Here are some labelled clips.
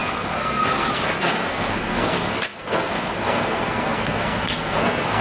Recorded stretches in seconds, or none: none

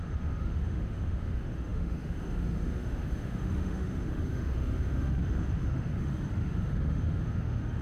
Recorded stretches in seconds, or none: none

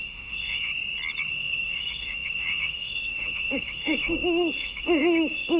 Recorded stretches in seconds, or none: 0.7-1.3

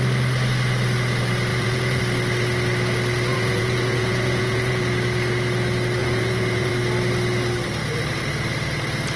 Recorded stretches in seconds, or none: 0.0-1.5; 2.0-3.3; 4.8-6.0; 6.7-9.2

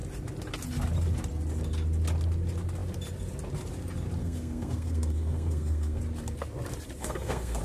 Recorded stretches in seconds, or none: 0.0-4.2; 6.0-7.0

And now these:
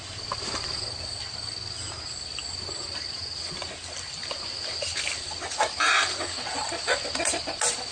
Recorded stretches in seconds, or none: 0.0-7.9

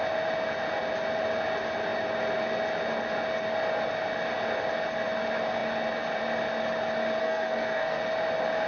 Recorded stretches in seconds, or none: 0.0-7.2; 8.0-8.7